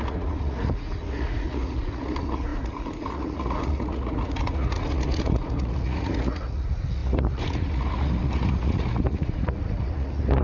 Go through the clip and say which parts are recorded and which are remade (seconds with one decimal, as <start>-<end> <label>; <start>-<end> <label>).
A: 0.0-10.4 remade